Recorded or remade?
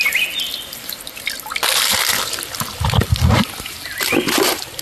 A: recorded